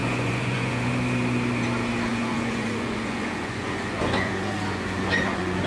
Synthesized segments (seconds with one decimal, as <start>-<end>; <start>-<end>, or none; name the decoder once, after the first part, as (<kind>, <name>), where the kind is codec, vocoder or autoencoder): 0.0-0.9 (vocoder, Vocos); 2.1-5.7